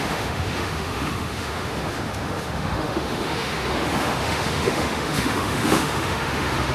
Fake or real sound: fake